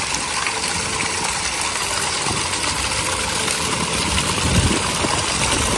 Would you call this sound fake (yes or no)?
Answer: no